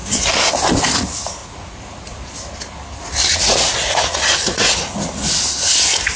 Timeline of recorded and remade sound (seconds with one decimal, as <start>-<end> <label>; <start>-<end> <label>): 0.0-1.4 recorded; 1.4-2.3 remade; 2.3-3.3 recorded; 3.3-5.1 remade; 5.1-6.2 recorded